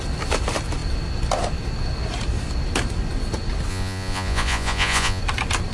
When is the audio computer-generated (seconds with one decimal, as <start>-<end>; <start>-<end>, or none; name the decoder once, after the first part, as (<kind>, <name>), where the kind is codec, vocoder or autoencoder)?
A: 3.7-5.2 (vocoder, Vocos)